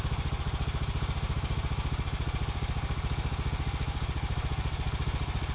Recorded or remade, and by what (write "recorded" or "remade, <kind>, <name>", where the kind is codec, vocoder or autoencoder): recorded